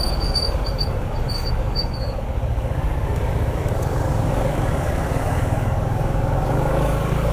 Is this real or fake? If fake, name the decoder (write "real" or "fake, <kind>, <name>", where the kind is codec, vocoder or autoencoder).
fake, codec, DAC